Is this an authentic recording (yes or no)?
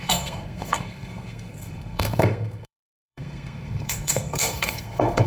no